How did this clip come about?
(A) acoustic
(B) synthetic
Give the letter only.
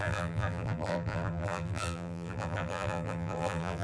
B